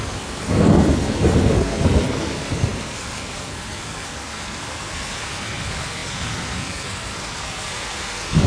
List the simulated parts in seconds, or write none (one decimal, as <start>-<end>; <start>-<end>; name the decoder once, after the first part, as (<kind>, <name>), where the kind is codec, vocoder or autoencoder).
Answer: 0.0-8.5 (codec, SNAC)